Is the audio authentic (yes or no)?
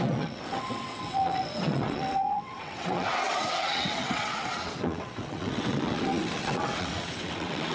no